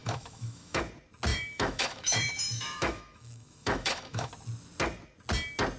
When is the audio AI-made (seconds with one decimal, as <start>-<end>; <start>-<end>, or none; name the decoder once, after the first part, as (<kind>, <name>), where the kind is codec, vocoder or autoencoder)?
0.0-0.8 (autoencoder, DAC-VAE); 1.3-4.3